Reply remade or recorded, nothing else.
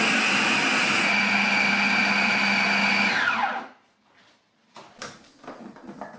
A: recorded